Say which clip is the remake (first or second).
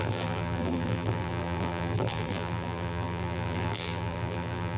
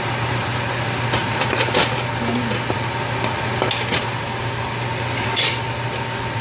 first